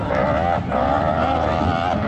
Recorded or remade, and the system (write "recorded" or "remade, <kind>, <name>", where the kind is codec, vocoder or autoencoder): recorded